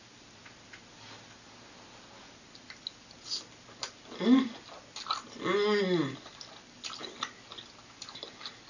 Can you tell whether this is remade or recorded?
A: recorded